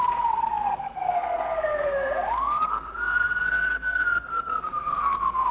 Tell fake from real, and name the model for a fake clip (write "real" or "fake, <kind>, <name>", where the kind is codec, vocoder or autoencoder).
fake, codec, SNAC